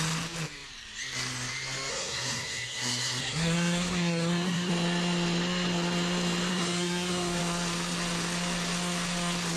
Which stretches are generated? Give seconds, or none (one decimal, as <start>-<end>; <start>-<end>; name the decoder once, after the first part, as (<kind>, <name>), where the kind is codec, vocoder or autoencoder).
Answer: 1.9-4.7 (codec, SNAC); 6.5-7.4